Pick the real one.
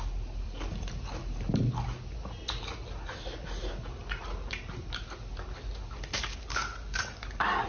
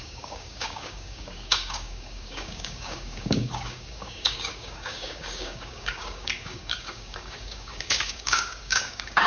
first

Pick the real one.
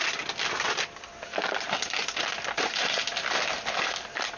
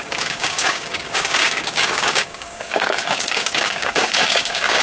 first